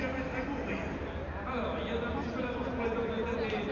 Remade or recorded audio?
recorded